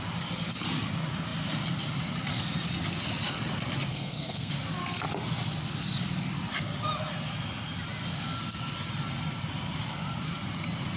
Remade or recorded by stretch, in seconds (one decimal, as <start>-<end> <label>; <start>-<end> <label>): 0.0-3.9 recorded; 3.9-4.5 remade; 4.5-11.0 recorded